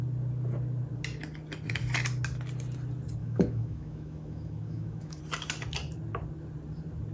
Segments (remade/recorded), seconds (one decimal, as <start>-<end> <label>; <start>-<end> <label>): 0.0-3.2 recorded; 3.2-5.2 remade; 5.2-7.1 recorded